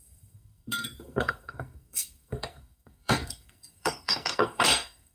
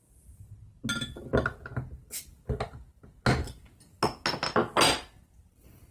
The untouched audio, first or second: second